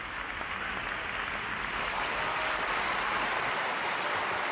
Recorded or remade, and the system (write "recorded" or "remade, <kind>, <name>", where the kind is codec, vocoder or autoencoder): recorded